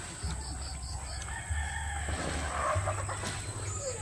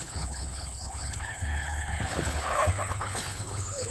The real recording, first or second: first